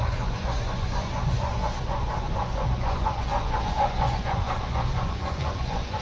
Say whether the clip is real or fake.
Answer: fake